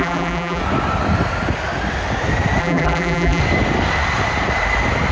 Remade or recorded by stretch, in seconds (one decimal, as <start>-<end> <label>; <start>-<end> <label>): 0.0-0.6 remade; 0.6-2.6 recorded; 2.6-3.4 remade; 3.4-5.1 recorded

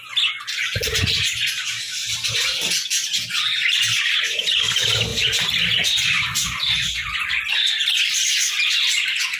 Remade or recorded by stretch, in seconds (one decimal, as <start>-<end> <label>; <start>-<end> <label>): 0.0-5.1 recorded; 5.1-8.8 remade; 8.8-9.4 recorded